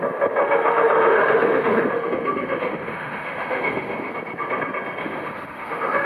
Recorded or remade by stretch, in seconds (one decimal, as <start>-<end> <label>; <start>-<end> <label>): 0.0-0.4 recorded; 0.4-4.1 remade; 4.1-5.0 recorded; 5.0-6.1 remade